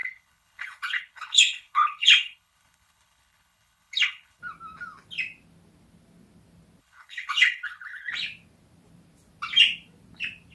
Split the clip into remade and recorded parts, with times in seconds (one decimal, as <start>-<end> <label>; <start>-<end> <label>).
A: 0.0-4.4 remade; 4.4-6.8 recorded; 6.8-8.1 remade; 8.1-10.5 recorded